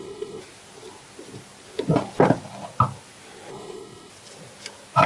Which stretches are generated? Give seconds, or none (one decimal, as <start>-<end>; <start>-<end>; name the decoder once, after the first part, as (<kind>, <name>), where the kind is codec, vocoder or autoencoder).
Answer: 0.0-0.4 (codec, HILCodec); 3.5-4.1